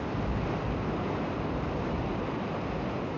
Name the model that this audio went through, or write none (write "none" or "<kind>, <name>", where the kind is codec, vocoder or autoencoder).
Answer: none